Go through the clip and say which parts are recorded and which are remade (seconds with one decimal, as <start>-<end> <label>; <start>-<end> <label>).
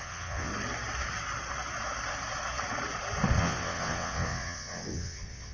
0.0-0.5 remade; 0.5-3.4 recorded; 3.4-5.5 remade